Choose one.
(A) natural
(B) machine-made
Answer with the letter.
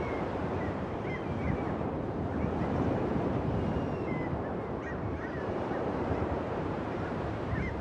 B